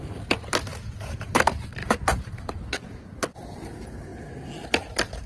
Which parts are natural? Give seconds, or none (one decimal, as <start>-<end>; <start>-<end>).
0.0-0.7; 1.3-1.8; 3.4-5.3